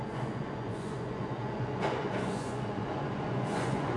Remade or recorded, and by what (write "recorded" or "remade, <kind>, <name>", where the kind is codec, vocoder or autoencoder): remade, vocoder, Vocos